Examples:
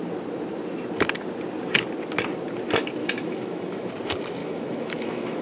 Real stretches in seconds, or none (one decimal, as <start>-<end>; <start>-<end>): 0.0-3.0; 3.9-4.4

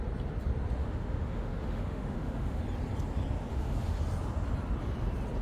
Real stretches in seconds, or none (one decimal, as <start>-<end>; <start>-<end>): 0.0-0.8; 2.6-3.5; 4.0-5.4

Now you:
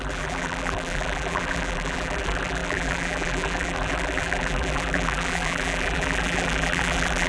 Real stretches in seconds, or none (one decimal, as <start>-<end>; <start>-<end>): none

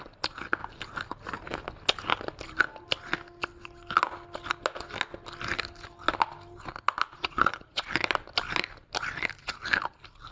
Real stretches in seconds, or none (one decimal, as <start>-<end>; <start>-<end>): 0.0-7.1; 7.9-10.3

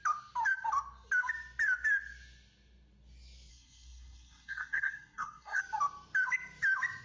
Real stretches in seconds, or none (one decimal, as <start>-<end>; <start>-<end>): 0.0-3.5; 5.6-7.0

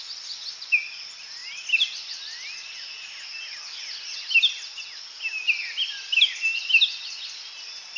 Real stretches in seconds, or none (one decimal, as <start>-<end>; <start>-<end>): 0.0-8.0

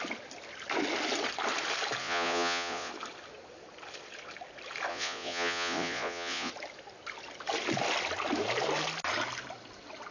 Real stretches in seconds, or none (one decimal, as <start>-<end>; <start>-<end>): 0.0-2.0; 2.9-4.9; 6.5-10.1